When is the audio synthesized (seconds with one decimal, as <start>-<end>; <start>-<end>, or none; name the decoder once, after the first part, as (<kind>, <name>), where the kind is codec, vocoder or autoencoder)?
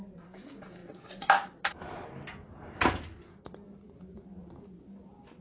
none